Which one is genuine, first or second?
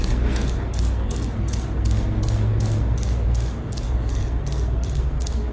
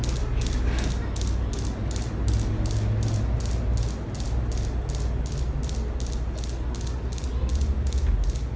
second